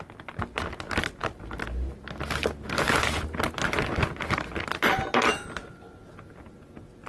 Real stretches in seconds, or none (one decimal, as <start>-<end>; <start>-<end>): 0.0-7.1